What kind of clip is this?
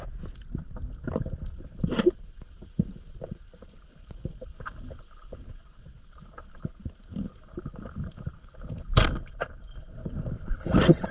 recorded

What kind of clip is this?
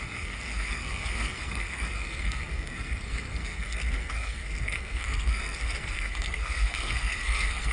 remade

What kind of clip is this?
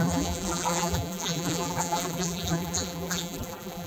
remade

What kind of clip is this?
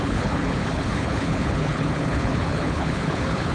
remade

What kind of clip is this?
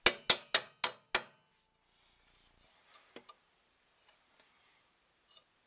recorded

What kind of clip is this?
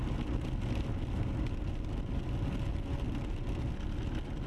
recorded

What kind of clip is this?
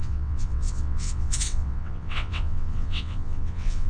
remade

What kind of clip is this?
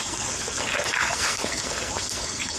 remade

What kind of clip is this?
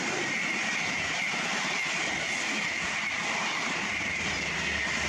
recorded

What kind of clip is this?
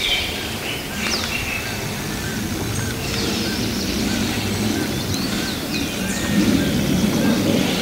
recorded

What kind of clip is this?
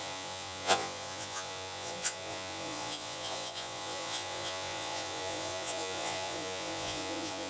remade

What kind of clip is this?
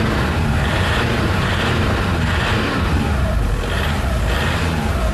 remade